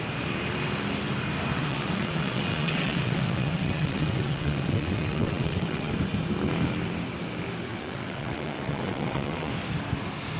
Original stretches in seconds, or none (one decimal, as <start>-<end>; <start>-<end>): 0.0-1.5; 5.9-7.7; 9.5-10.4